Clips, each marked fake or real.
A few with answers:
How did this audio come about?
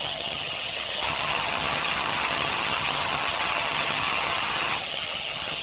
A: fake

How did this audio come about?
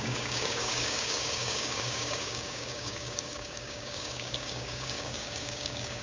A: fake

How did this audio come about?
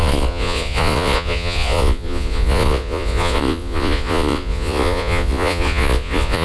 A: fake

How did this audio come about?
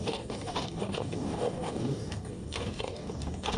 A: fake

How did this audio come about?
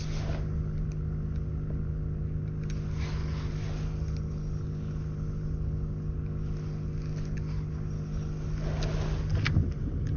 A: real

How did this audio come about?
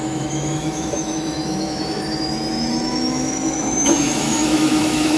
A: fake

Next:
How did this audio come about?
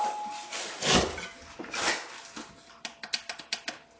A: real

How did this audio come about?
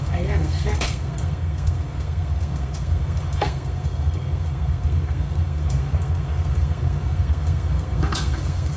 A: fake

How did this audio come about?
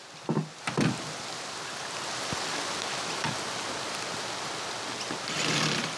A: real